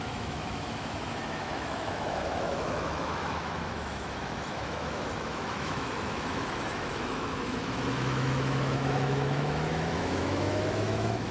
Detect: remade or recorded remade